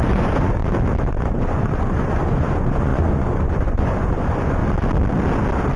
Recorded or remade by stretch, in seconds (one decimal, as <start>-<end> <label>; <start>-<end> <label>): 0.0-0.6 remade; 0.6-1.2 recorded; 1.2-4.6 remade; 4.6-5.8 recorded